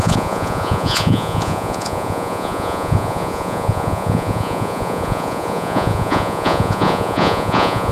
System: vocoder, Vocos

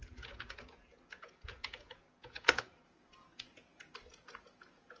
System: vocoder, Vocos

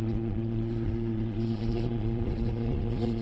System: vocoder, Vocos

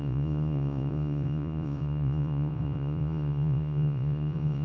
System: vocoder, Vocos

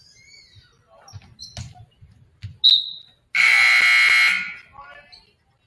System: none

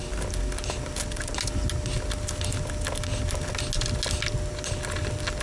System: none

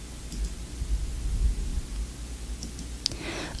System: none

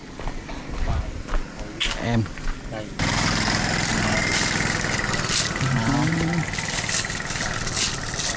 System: none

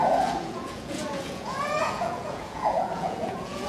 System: vocoder, Vocos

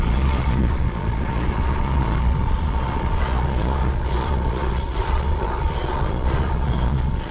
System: vocoder, Vocos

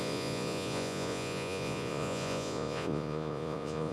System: vocoder, Vocos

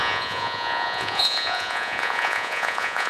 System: vocoder, Vocos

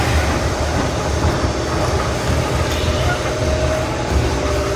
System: none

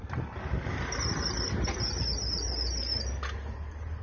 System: none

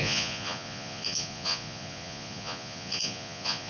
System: vocoder, Vocos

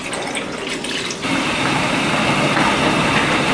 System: none